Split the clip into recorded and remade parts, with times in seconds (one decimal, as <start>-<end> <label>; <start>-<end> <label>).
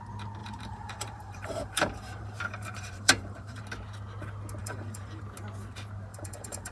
0.0-0.4 recorded; 0.4-3.6 remade; 3.6-4.6 recorded; 4.6-5.2 remade; 5.2-6.1 recorded; 6.1-6.7 remade